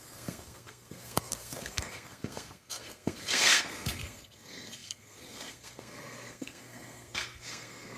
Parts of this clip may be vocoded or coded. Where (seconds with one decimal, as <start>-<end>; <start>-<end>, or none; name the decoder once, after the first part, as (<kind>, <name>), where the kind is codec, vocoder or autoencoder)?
0.0-8.0 (codec, SNAC)